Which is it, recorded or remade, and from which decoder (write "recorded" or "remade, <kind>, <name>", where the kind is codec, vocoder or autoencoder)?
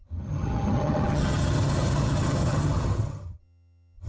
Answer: remade, vocoder, HiFi-GAN